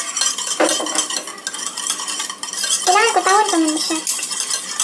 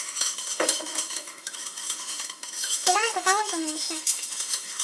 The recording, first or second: first